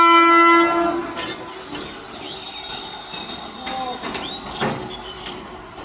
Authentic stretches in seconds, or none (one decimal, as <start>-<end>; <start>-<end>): 0.0-5.8